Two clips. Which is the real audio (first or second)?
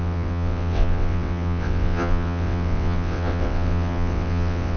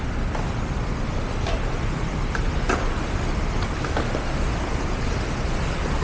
second